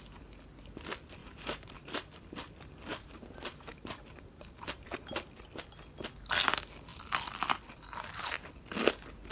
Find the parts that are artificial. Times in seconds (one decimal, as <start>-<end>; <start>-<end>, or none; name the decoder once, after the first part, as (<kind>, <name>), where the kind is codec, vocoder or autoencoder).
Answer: 1.2-2.1 (vocoder, BigVGAN v2); 2.9-5.7